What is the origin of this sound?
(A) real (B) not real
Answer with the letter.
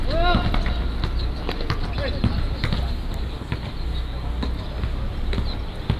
A